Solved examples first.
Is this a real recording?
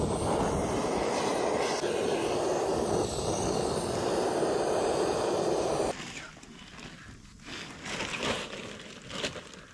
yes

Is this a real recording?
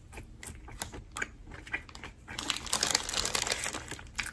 yes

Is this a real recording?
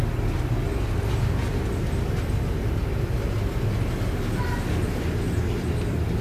yes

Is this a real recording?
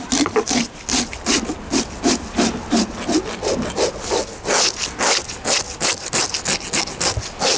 yes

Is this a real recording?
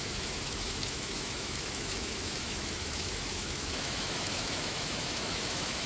no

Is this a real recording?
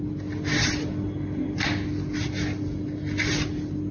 yes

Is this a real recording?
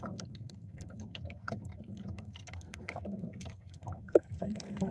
no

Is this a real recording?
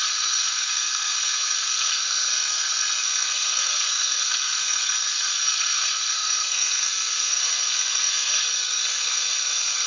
no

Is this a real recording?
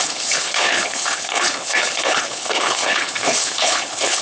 no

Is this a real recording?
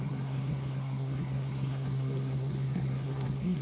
no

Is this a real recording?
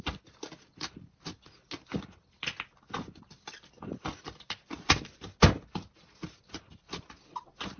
yes